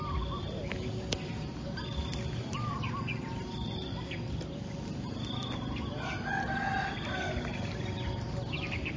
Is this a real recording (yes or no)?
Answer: yes